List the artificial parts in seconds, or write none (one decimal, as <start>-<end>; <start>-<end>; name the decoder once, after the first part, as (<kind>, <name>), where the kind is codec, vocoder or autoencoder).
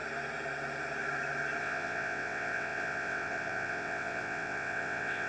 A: 1.6-5.3 (vocoder, WaveNeXt)